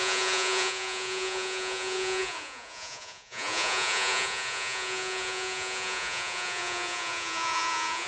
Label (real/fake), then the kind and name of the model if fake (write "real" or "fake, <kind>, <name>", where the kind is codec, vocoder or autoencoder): fake, vocoder, Vocos